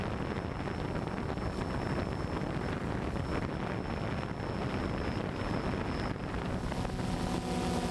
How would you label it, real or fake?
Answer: real